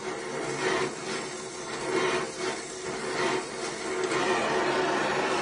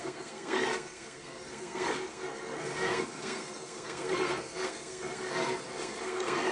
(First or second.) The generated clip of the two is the second